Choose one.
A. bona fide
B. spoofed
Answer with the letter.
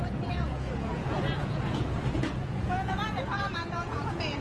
B